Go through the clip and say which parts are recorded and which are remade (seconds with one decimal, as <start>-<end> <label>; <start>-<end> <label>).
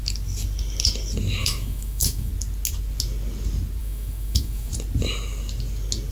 0.0-1.4 recorded; 1.4-2.3 remade; 2.3-3.8 recorded; 3.8-4.7 remade; 4.7-6.1 recorded